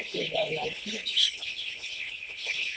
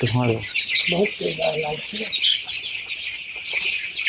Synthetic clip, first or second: first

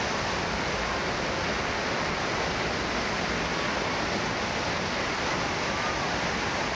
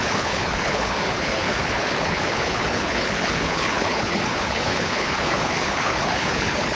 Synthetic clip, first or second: second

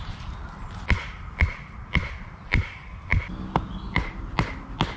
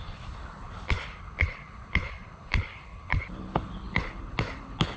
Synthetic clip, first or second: second